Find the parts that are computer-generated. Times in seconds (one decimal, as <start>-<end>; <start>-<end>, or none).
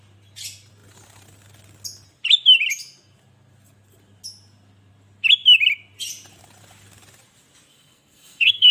7.7-8.7